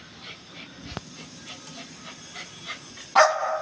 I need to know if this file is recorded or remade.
recorded